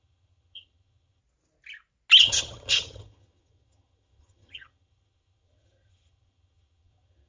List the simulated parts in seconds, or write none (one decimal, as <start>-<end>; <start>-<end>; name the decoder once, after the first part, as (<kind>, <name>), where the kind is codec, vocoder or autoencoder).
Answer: 0.0-1.2 (vocoder, HiFi-GAN); 2.2-7.3

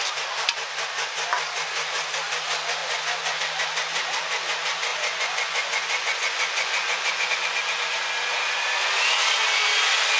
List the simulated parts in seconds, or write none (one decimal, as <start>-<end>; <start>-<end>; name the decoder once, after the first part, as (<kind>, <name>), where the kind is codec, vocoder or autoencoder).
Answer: 2.8-3.4 (vocoder, Vocos); 4.9-7.3

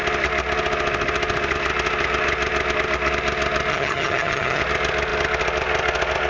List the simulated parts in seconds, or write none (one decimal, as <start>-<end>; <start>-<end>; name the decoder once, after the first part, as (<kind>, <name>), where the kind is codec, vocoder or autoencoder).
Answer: 3.7-4.6 (vocoder, HiFi-GAN)

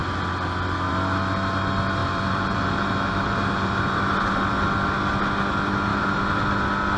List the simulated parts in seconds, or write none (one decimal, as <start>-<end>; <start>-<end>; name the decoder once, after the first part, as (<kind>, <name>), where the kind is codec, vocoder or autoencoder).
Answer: 2.0-3.8 (vocoder, BigVGAN v2); 5.9-6.4

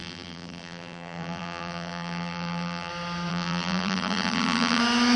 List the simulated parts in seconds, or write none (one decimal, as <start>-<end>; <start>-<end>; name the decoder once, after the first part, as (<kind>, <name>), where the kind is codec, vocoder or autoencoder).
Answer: 0.0-2.9 (vocoder, BigVGAN v2); 3.3-4.8

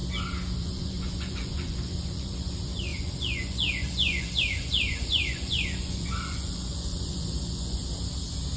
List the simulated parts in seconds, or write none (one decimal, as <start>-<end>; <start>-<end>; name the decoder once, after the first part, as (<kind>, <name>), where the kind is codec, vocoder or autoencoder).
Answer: 0.6-7.8 (vocoder, Vocos)